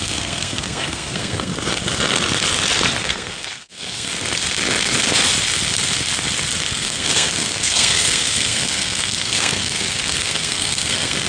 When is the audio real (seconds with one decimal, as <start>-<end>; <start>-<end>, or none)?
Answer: 1.5-3.0; 4.1-6.7